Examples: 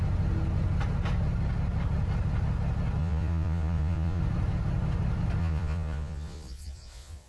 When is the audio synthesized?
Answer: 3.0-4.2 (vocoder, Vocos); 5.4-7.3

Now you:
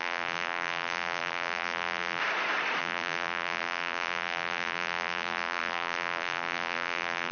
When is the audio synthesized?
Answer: 0.0-2.2 (vocoder, BigVGAN v2); 2.8-7.3

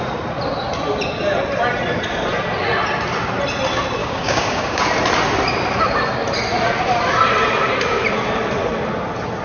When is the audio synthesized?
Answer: 4.0-4.8 (codec, DAC)

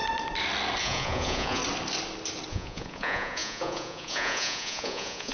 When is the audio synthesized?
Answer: 0.8-1.6 (vocoder, Vocos); 2.5-5.3